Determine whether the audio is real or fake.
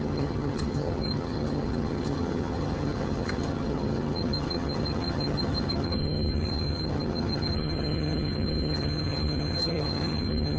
fake